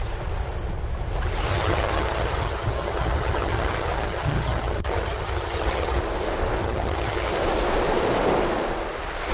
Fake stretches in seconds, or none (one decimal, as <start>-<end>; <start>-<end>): 1.5-6.0; 6.6-7.3